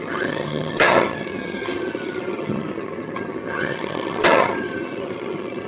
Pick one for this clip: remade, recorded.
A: remade